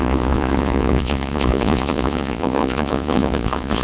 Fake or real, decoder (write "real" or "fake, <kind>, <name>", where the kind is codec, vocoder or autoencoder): fake, vocoder, Vocos